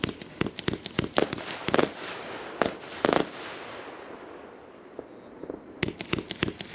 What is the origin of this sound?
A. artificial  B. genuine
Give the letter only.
B